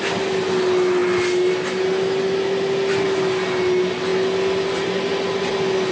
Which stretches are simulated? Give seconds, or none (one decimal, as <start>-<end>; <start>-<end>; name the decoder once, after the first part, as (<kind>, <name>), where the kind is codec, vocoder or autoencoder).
none